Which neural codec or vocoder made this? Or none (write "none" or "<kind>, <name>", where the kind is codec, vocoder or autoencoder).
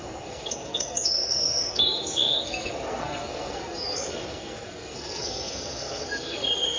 codec, SNAC